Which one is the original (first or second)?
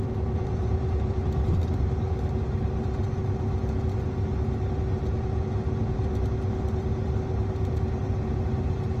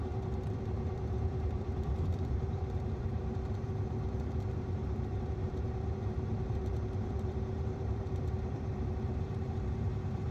first